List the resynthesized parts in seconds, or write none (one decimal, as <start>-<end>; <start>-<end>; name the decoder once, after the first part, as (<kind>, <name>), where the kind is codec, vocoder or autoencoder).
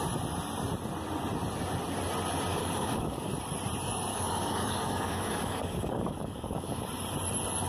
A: 2.5-3.3 (codec, DAC); 4.1-6.8